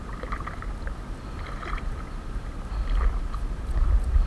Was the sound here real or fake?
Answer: fake